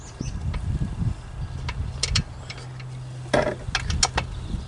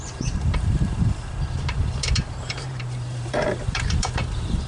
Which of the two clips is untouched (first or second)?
first